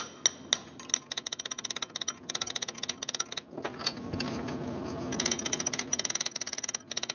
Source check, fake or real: real